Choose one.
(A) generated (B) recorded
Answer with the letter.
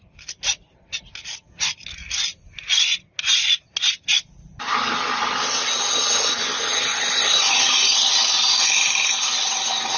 B